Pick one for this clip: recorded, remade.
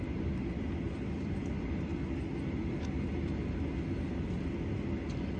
recorded